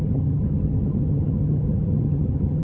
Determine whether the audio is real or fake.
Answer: fake